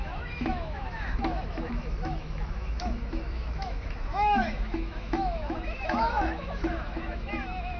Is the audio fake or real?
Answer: fake